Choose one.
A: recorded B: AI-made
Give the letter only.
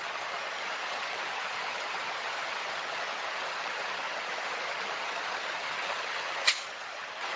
B